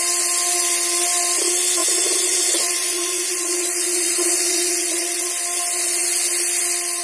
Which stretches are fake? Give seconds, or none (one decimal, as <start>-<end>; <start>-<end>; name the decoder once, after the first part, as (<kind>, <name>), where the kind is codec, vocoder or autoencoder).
1.8-5.3 (vocoder, Vocos)

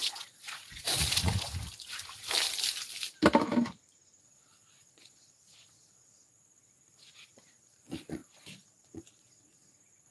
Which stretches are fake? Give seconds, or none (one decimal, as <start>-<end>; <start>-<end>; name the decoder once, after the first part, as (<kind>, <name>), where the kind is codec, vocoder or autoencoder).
0.0-1.5 (vocoder, Vocos); 4.2-10.1

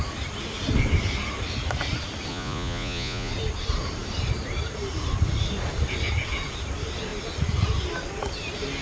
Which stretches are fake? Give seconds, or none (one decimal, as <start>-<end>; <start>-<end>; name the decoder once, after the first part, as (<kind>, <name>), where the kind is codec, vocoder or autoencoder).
2.3-3.3 (vocoder, Vocos)

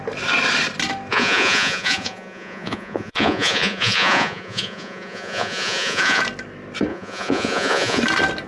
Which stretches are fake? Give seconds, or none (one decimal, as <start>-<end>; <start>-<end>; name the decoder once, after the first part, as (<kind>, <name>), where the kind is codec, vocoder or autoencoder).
1.1-6.2 (vocoder, Vocos); 6.9-8.0